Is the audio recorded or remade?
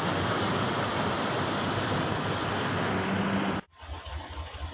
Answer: recorded